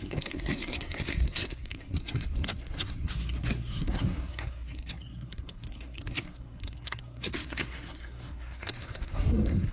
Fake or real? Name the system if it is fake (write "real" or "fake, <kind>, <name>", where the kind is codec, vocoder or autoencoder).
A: fake, codec, SNAC